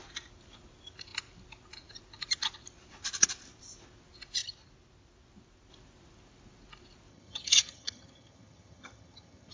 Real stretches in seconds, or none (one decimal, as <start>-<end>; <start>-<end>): 0.0-7.1